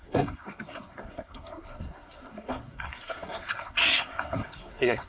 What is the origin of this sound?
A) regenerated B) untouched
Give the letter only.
A